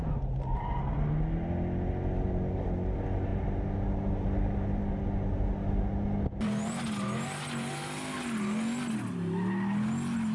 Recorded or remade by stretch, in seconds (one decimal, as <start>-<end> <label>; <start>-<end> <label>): 0.0-10.3 recorded